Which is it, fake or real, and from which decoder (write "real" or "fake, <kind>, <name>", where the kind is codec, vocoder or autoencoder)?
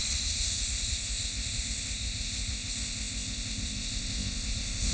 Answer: fake, codec, ZipCodec